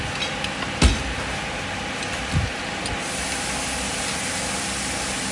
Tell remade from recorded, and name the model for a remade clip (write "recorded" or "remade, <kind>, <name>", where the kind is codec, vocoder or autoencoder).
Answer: recorded